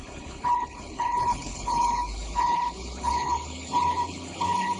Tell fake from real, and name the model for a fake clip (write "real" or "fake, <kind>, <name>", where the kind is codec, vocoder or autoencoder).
fake, codec, HILCodec